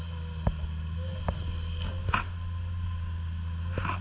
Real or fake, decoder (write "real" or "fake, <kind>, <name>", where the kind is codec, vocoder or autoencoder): real